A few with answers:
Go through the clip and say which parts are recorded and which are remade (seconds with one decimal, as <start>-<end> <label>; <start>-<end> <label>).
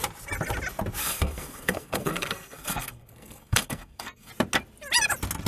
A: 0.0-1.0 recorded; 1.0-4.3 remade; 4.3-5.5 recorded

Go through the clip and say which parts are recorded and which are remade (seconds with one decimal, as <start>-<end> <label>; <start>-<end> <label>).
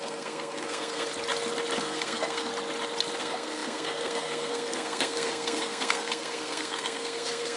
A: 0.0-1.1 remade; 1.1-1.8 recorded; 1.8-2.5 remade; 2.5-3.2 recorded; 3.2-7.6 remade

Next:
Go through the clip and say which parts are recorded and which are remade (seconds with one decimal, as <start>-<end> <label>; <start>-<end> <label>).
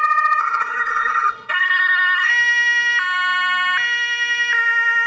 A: 0.0-0.4 recorded; 0.4-2.3 remade; 2.3-5.1 recorded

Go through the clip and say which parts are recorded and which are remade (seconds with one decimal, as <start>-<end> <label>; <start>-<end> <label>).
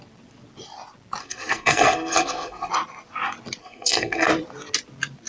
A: 0.0-1.2 recorded; 1.2-2.7 remade; 2.7-3.6 recorded; 3.6-4.3 remade; 4.3-5.3 recorded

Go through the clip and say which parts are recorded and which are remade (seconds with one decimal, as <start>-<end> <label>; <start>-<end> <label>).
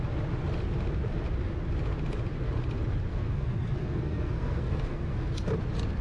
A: 0.0-3.1 recorded; 3.1-5.3 remade; 5.3-6.0 recorded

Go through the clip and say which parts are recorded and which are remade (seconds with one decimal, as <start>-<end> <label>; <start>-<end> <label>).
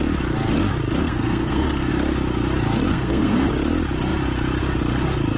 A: 0.0-1.0 recorded; 1.0-1.9 remade; 1.9-2.9 recorded; 2.9-3.5 remade; 3.5-5.4 recorded